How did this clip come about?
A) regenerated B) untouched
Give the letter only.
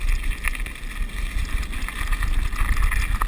B